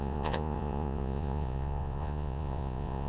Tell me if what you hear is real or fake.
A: fake